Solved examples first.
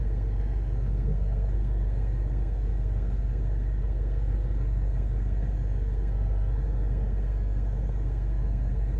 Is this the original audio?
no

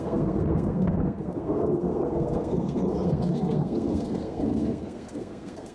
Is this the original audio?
no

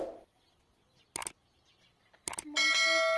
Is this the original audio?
yes